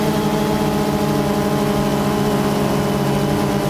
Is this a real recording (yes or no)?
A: yes